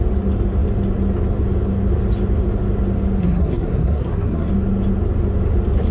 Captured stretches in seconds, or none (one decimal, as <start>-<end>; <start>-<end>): 0.0-3.2; 4.5-5.9